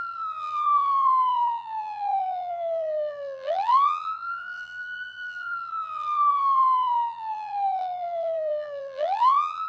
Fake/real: fake